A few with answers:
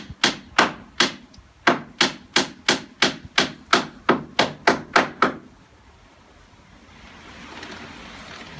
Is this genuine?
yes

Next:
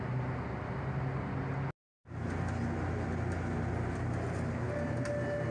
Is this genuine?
yes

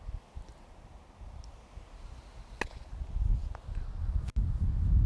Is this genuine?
yes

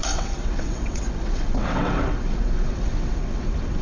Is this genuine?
no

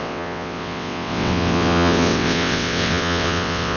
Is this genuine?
no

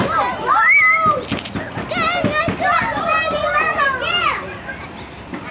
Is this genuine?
yes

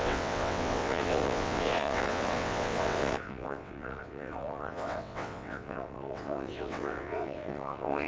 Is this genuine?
no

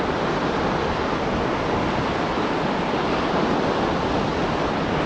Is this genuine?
yes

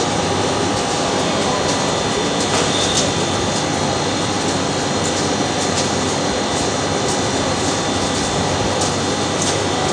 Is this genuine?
yes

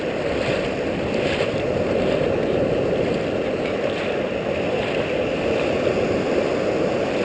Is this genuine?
yes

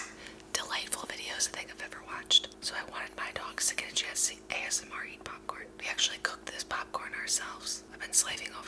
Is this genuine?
yes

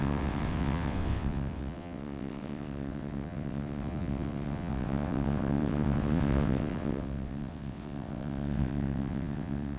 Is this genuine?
no